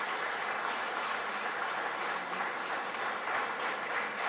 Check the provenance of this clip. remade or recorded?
recorded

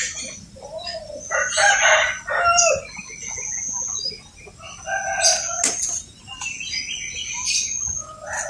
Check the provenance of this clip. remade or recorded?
recorded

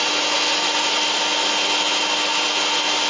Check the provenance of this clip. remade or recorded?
recorded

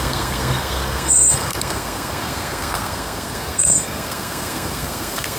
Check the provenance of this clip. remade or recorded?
remade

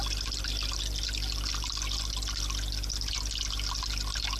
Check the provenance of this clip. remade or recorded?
recorded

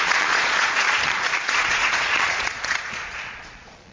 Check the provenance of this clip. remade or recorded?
remade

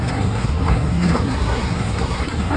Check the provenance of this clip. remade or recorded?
remade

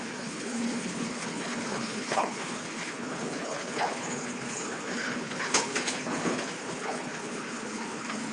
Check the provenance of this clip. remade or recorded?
remade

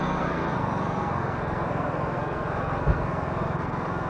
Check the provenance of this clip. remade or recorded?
remade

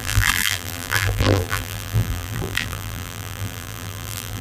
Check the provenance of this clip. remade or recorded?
remade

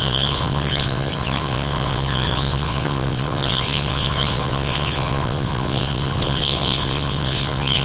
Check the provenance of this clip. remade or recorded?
remade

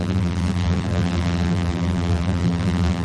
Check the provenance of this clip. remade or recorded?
remade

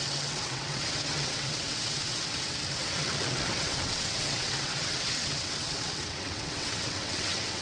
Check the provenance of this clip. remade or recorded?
remade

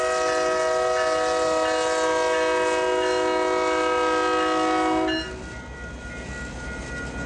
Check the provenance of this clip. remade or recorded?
recorded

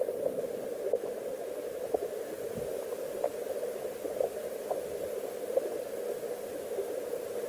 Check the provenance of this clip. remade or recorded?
recorded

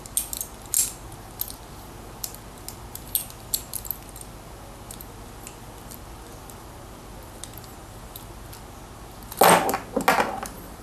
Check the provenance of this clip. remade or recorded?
recorded